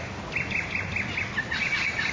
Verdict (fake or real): real